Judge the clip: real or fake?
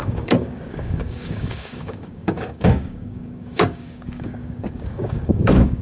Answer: fake